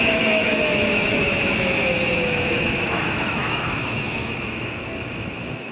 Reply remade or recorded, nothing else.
remade